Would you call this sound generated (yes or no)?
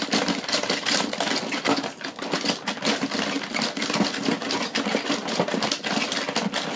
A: no